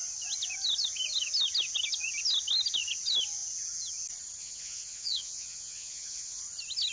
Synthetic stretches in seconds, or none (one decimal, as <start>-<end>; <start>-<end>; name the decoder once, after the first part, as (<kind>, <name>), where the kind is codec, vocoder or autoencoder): 4.4-6.4 (vocoder, Vocos)